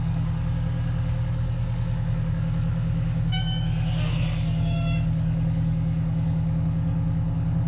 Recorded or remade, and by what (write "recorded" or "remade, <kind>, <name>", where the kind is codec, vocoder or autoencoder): remade, codec, DAC